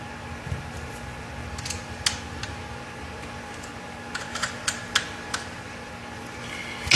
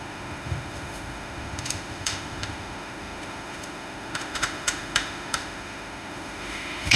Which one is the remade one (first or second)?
second